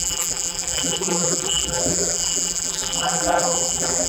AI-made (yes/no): yes